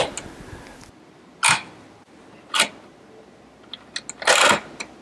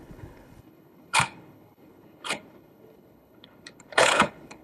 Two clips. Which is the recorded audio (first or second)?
first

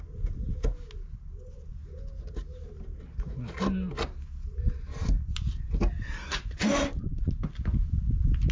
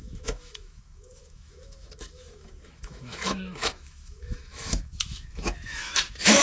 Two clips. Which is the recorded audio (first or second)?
first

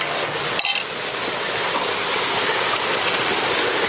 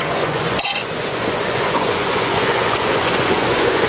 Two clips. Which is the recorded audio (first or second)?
first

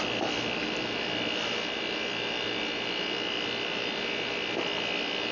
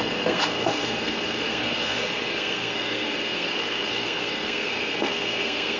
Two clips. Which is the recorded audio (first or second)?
first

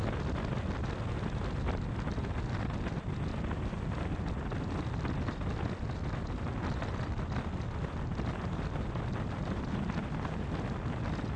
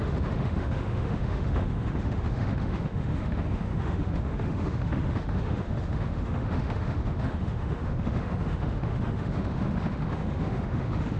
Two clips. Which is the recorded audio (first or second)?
first